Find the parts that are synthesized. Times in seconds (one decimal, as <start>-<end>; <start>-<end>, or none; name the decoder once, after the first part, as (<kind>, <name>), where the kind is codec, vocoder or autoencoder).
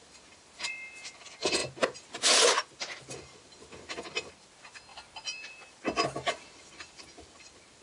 4.9-7.8 (vocoder, BigVGAN v2)